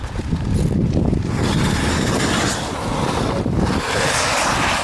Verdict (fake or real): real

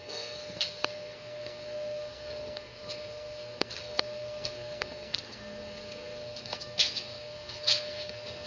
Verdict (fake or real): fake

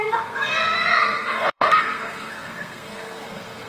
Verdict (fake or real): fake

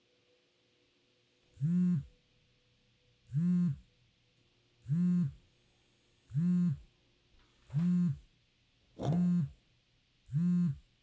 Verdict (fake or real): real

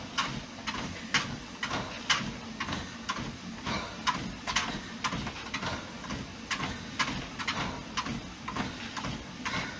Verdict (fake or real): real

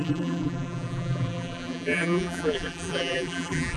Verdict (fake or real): fake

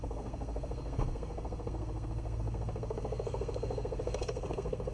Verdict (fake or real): fake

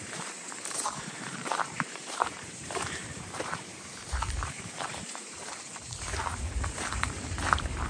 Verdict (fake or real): fake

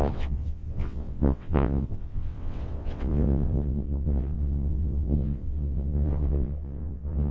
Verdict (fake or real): fake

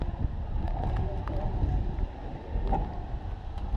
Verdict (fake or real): real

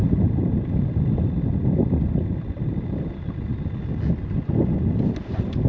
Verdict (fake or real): real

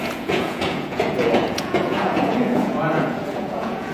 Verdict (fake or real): fake